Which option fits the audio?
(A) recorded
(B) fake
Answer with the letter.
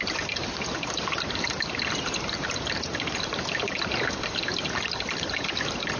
A